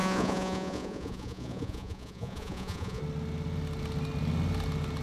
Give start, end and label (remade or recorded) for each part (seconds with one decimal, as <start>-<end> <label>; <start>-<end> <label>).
0.0-3.0 remade; 3.0-5.0 recorded